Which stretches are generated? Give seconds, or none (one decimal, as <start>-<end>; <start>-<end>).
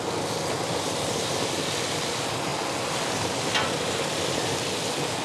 none